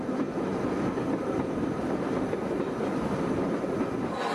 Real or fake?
real